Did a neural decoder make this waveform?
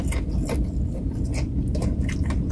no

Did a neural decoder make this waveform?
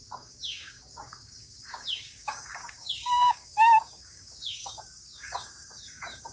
yes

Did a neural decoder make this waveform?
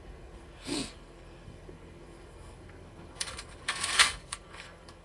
yes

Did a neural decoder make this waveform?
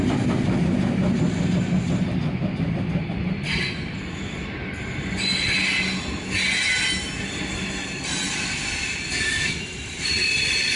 no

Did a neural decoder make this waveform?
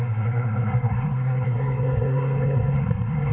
yes